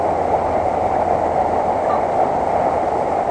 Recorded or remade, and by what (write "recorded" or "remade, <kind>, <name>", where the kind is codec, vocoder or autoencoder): recorded